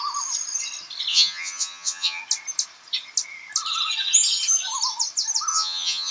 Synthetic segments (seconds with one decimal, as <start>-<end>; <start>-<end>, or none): 1.1-2.2; 5.5-6.1